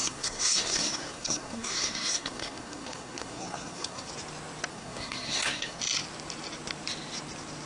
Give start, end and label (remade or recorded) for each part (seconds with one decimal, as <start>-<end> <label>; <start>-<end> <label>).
0.0-4.1 remade; 4.1-4.7 recorded; 4.7-5.8 remade; 5.8-7.7 recorded